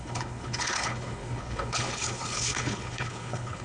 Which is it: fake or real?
fake